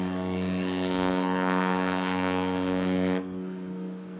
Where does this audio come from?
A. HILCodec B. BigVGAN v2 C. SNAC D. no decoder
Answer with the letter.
C